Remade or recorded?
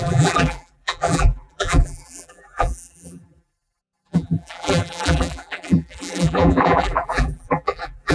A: remade